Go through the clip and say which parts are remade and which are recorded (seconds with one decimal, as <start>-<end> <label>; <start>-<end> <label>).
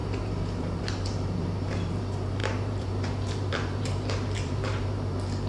0.0-2.0 remade; 2.0-2.4 recorded; 2.4-5.5 remade